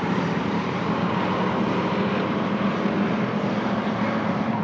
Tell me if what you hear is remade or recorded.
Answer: remade